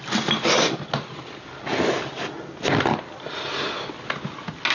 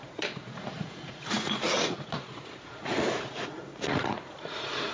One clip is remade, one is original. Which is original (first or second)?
first